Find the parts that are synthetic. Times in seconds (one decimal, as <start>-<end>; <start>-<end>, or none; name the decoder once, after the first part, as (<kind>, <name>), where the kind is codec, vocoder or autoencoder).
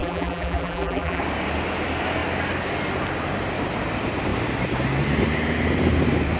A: 0.0-1.2 (vocoder, BigVGAN v2)